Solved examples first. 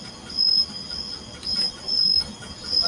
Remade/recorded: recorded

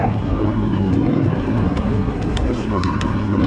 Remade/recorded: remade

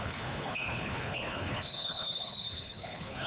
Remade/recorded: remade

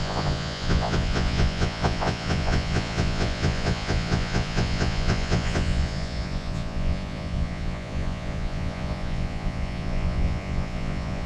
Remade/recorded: remade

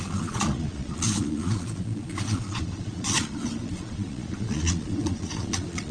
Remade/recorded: remade